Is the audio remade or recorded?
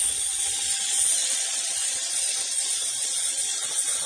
remade